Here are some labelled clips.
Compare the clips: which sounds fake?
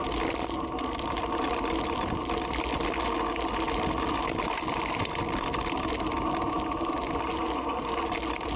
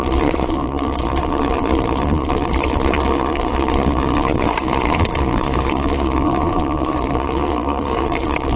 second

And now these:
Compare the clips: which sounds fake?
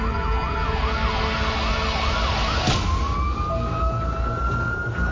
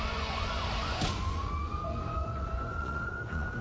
second